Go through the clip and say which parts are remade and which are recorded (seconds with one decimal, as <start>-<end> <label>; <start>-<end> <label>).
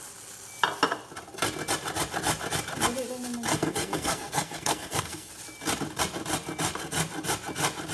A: 0.0-3.5 recorded; 3.5-5.3 remade; 5.3-7.9 recorded